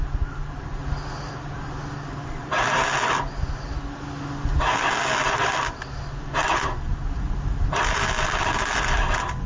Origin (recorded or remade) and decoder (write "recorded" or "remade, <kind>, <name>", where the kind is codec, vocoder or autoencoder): recorded